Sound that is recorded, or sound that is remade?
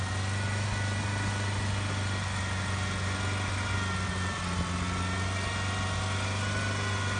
recorded